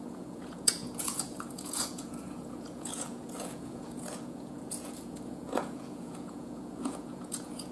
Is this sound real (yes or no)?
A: no